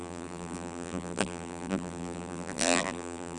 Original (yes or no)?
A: no